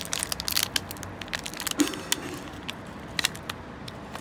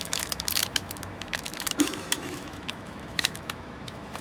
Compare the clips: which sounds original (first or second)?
first